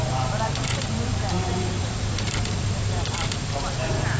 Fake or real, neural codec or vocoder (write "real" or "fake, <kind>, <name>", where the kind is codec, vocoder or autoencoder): fake, vocoder, BigVGAN v2